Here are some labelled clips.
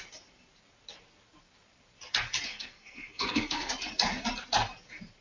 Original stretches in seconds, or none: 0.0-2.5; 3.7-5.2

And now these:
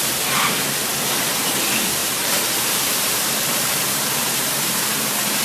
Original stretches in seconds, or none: 0.0-2.0

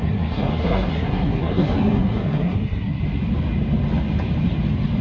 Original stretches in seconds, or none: 3.0-5.0

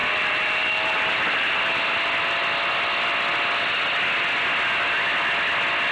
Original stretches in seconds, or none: 1.6-5.9

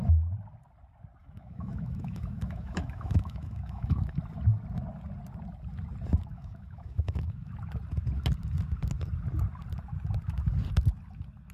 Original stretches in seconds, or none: 0.0-1.2; 4.2-6.3; 7.5-11.5

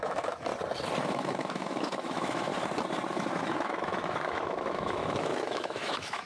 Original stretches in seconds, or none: 0.5-1.0; 2.5-3.1